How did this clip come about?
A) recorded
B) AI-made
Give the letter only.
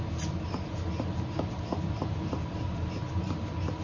A